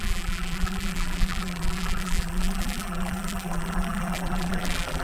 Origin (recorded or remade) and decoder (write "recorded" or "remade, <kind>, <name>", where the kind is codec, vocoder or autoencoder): remade, vocoder, BigVGAN v2